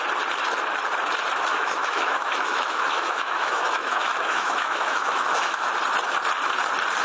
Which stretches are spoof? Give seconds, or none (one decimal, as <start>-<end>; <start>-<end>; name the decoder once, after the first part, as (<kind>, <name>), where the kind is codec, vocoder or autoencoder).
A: 1.5-5.7 (autoencoder, DAC-VAE)